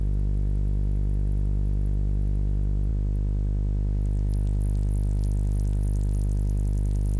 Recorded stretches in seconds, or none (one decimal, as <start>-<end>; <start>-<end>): 2.9-7.2